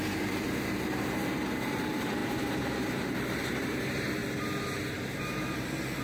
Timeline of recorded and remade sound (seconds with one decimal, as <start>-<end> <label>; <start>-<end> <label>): 0.0-4.2 remade; 4.2-4.9 recorded; 4.9-6.0 remade